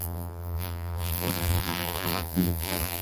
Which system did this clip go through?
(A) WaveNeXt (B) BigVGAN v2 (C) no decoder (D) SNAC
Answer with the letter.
B